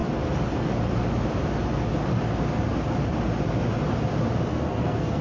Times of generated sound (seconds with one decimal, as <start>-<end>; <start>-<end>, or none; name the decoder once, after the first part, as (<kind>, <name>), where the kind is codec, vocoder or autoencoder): 4.5-5.2 (codec, SNAC)